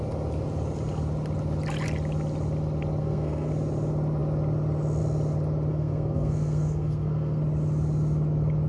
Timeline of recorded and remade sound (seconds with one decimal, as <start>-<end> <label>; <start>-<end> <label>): 0.0-3.0 recorded; 3.0-3.5 remade; 3.5-5.7 recorded; 5.7-7.4 remade; 7.4-8.7 recorded